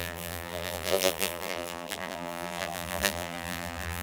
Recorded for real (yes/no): no